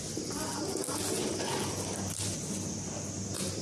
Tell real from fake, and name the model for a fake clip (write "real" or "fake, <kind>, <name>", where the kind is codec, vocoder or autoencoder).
real